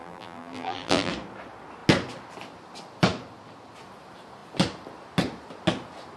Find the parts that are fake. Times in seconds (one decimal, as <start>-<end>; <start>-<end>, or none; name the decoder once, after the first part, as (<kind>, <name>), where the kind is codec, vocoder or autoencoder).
0.0-1.1 (vocoder, BigVGAN v2)